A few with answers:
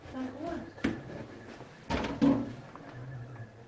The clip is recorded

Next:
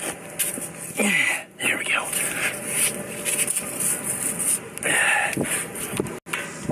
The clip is recorded